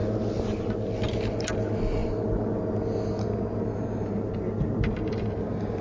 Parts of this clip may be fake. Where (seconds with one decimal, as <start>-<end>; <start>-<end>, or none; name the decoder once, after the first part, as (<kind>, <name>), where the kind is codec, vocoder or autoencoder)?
none